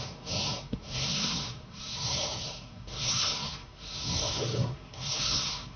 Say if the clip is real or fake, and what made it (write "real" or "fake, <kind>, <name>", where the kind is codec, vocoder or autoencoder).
fake, codec, SNAC